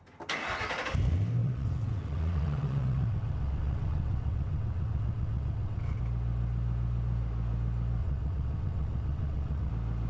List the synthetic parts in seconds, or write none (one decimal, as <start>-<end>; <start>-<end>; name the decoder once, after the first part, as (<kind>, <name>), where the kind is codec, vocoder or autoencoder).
1.4-6.0 (vocoder, WaveNeXt); 8.0-9.7